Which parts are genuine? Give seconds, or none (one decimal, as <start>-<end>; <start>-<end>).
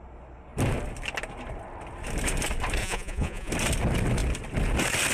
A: 0.0-2.8; 3.5-5.1